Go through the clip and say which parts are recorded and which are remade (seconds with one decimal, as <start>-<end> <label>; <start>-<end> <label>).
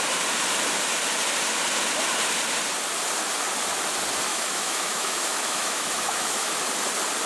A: 0.0-4.3 recorded; 4.3-6.6 remade; 6.6-7.3 recorded